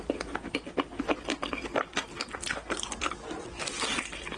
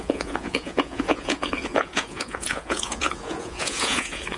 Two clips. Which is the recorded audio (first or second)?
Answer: first